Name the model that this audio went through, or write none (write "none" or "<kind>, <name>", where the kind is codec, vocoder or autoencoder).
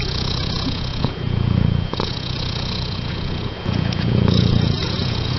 vocoder, Vocos